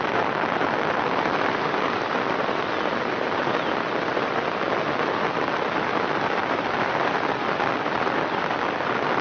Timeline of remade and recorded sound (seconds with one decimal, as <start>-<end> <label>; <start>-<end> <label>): 0.0-9.2 remade